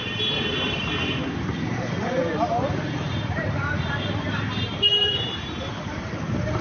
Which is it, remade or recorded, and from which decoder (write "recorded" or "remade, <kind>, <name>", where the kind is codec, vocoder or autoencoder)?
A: remade, vocoder, BigVGAN v2